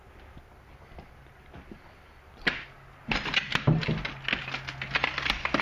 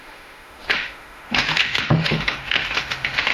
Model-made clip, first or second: second